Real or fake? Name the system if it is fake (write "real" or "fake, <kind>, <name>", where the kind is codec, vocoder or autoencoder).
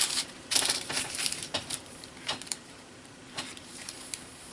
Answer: fake, vocoder, BigVGAN v2